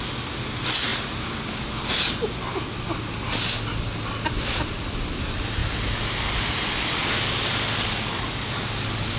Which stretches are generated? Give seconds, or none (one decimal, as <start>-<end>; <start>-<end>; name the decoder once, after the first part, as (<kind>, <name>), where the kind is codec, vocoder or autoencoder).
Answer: none